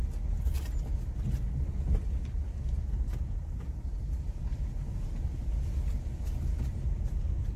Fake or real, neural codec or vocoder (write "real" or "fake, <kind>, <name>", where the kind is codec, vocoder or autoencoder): real